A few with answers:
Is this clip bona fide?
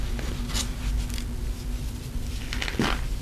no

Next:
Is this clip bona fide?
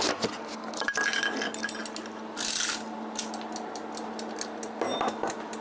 yes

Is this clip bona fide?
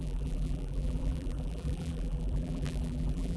no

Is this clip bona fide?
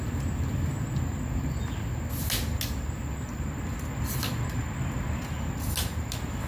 yes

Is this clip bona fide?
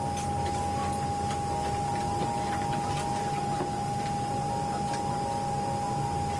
yes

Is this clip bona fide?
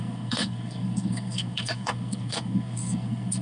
no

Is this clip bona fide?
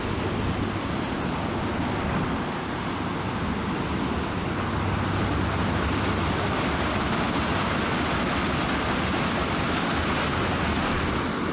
yes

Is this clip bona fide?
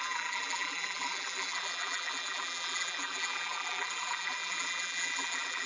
no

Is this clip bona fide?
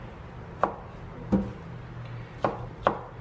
yes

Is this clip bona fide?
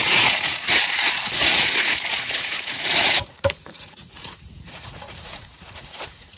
no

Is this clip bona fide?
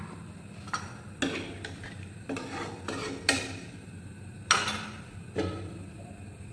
yes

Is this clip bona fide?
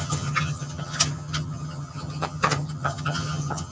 no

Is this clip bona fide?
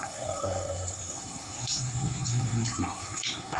no